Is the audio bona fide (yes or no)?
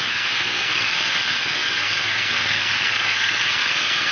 no